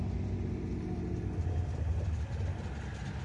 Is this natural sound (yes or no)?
yes